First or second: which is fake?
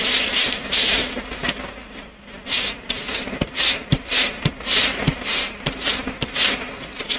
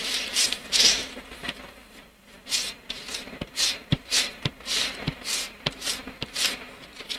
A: second